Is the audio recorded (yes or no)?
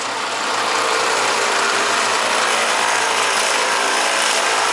no